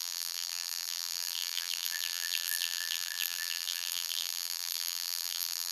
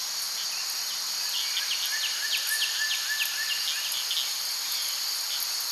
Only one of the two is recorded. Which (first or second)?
second